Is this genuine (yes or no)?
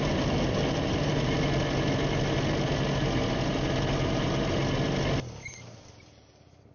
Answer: yes